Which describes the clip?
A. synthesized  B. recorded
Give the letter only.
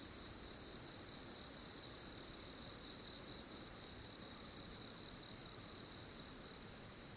B